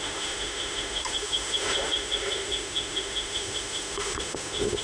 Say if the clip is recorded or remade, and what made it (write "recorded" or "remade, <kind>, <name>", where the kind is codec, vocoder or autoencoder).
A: remade, autoencoder, DAC-VAE